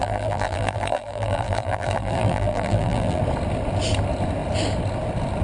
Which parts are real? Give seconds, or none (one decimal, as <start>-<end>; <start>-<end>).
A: 3.2-5.4